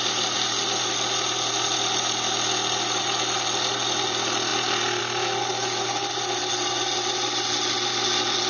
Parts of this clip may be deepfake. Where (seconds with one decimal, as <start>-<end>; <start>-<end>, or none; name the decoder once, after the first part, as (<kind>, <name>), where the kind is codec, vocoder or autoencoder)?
none